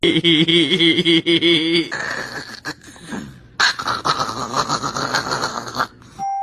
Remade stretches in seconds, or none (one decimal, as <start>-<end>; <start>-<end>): 5.5-6.0